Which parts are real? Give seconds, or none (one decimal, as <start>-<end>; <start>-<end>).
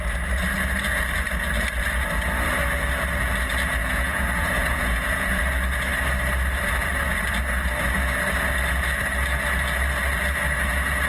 0.0-3.8; 5.4-11.1